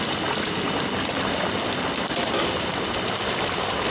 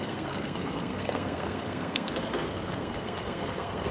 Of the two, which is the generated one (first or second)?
second